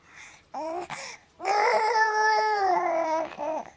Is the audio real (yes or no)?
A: no